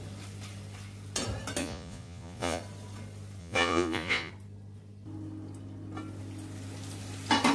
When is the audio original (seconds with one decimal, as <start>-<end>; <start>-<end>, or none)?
0.0-1.6; 2.6-3.4; 4.3-7.5